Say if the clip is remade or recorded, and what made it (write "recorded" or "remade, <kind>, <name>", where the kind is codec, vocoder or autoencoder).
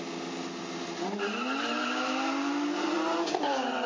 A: recorded